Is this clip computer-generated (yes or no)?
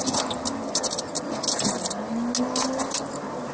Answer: no